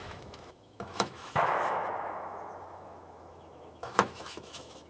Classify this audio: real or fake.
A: fake